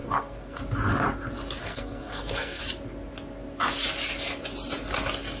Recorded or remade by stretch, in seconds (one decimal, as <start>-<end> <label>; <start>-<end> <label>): 0.0-0.6 remade; 0.6-1.6 recorded; 1.6-2.6 remade; 2.6-5.4 recorded